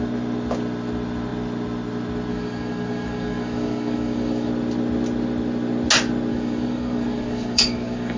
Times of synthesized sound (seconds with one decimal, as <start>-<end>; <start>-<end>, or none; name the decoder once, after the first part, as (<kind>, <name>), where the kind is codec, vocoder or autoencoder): 2.3-4.5 (codec, DAC); 6.3-8.2